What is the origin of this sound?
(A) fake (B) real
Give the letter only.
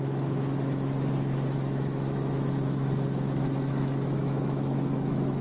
A